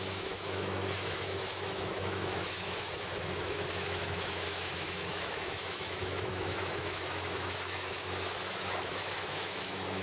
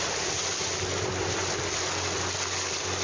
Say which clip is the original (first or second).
second